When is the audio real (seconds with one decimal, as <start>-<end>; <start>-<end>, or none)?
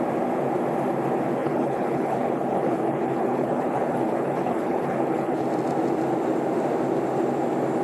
0.0-1.4; 5.4-7.8